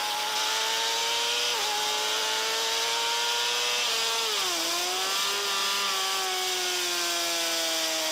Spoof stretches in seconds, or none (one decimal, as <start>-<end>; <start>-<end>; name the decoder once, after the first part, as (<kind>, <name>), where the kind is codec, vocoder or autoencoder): none